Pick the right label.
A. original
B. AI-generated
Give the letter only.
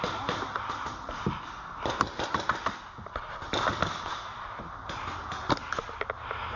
A